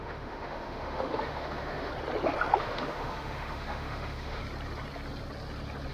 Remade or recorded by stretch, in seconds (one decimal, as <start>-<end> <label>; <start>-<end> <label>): 0.0-1.9 remade; 1.9-2.6 recorded; 2.6-4.4 remade; 4.4-5.9 recorded